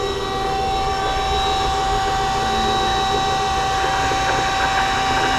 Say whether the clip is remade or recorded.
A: recorded